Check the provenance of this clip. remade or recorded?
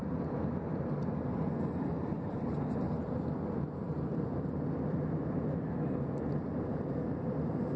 recorded